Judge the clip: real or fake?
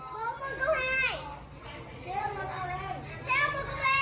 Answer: real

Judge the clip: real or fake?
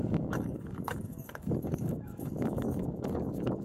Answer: fake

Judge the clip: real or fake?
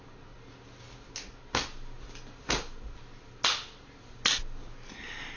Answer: real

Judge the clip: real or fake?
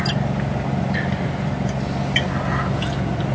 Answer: real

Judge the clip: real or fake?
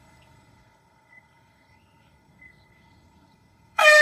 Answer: fake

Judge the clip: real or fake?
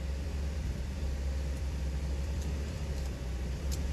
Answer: fake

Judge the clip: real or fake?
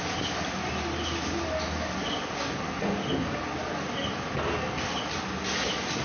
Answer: real